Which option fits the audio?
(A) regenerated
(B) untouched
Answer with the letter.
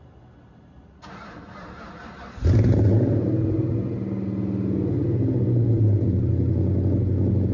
B